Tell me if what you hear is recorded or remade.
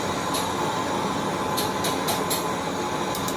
recorded